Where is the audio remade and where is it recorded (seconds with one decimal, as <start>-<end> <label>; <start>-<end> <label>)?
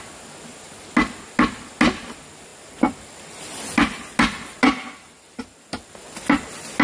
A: 0.0-6.8 recorded